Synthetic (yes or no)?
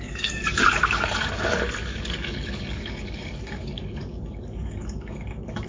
yes